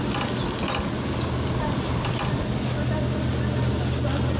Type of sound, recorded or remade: recorded